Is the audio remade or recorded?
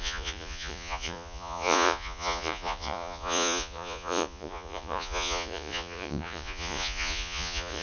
remade